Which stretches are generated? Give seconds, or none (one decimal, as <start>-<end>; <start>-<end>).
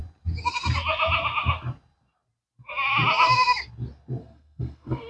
4.2-5.1